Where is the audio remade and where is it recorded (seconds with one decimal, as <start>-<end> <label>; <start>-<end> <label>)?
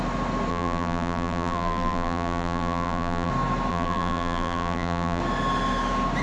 0.0-0.5 recorded; 0.5-3.3 remade; 3.3-3.7 recorded; 3.7-5.2 remade; 5.2-6.2 recorded